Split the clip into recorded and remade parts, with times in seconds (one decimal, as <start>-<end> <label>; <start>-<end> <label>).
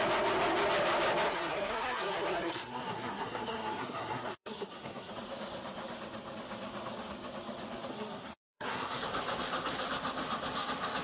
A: 0.0-1.3 recorded; 1.3-5.1 remade; 5.1-7.9 recorded; 7.9-9.0 remade; 9.0-11.0 recorded